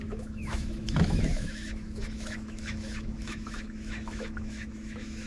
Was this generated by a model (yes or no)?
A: yes